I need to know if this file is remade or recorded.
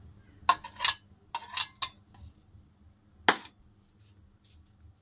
recorded